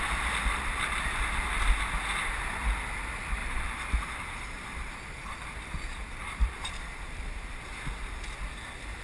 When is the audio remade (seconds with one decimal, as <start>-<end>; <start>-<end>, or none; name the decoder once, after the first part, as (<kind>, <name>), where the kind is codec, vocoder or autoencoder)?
3.4-7.6 (vocoder, BigVGAN v2)